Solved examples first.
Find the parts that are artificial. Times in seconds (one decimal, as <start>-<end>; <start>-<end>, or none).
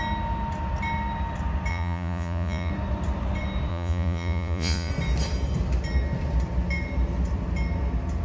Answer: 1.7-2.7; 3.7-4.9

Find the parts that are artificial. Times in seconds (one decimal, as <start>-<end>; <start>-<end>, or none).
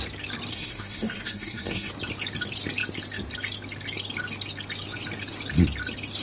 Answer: 0.5-1.9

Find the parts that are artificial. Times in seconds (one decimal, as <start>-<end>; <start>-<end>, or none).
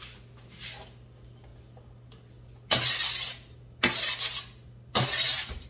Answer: none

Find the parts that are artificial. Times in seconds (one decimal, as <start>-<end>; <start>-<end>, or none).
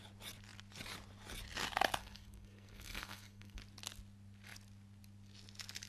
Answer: 2.0-3.6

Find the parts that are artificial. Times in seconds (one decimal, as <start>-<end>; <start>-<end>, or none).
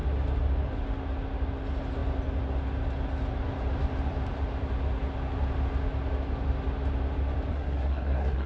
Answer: 7.5-8.5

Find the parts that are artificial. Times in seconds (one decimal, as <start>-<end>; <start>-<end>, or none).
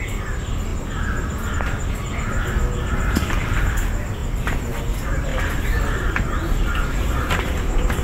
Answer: 5.3-7.5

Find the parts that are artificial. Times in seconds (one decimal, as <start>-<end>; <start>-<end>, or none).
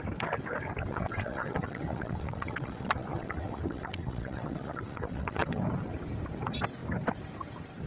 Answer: 0.9-5.6